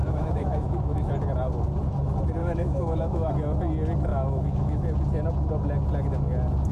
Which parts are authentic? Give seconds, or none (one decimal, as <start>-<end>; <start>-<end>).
1.1-2.4; 3.3-4.1; 4.8-6.7